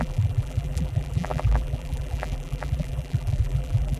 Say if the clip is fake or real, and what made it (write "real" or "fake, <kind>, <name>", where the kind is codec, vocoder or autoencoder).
fake, vocoder, BigVGAN v2